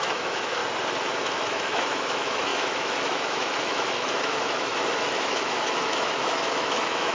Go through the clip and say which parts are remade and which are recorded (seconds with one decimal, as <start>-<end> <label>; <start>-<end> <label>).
0.0-0.6 remade; 0.6-1.2 recorded; 1.2-7.1 remade